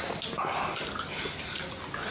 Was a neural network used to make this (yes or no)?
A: no